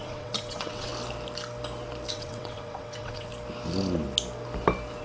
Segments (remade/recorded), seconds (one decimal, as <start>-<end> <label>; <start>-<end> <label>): 0.0-0.9 remade; 0.9-2.1 recorded; 2.1-3.3 remade; 3.3-5.0 recorded